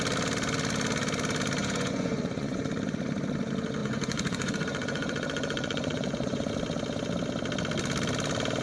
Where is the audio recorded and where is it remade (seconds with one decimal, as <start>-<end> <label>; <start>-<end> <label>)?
0.0-1.6 recorded; 1.6-2.6 remade; 2.6-3.8 recorded; 3.8-6.5 remade; 6.5-8.6 recorded

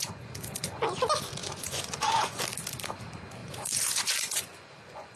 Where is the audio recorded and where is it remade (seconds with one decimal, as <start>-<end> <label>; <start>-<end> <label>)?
0.0-0.8 remade; 0.8-1.4 recorded; 1.4-2.4 remade; 2.4-3.4 recorded; 3.4-5.2 remade